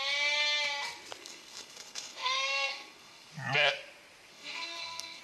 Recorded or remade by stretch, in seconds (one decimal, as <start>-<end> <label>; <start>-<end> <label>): 0.0-1.2 recorded; 1.2-3.3 remade; 3.3-4.3 recorded; 4.3-5.2 remade